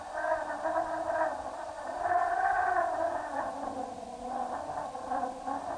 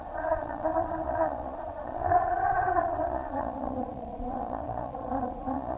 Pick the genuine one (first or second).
first